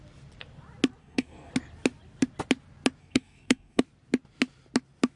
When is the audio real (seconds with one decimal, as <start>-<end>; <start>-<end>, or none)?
0.0-1.0; 1.5-3.0; 3.8-5.2